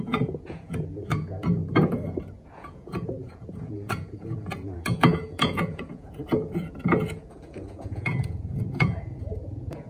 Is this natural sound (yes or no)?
no